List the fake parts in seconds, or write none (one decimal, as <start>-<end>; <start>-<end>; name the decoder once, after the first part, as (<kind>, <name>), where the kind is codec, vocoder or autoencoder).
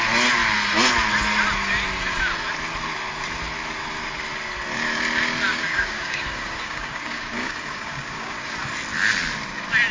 5.5-8.5 (codec, DAC)